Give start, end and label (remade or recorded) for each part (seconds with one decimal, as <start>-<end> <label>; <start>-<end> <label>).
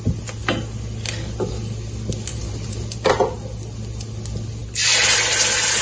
0.0-2.3 recorded; 2.3-3.1 remade; 3.1-5.8 recorded